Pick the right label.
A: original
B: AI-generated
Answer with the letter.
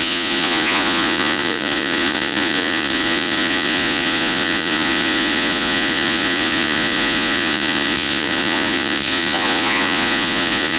B